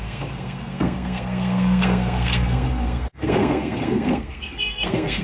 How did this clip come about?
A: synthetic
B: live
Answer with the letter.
A